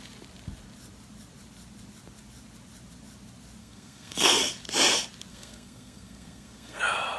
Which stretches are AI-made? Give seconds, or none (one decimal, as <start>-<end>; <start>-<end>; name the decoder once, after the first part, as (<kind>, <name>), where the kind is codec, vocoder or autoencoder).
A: 3.6-4.5 (codec, SNAC); 5.3-6.8